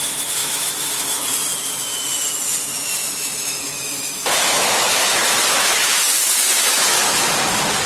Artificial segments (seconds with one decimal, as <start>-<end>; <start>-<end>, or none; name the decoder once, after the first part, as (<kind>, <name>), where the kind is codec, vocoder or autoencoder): 0.4-1.0 (autoencoder, DAC-VAE); 3.0-7.3